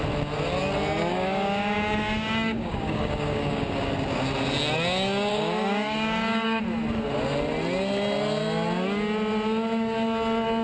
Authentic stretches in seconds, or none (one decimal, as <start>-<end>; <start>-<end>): 0.0-1.1; 3.9-5.3; 6.6-10.6